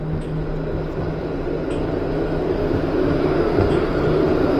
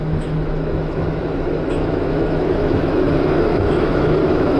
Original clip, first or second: first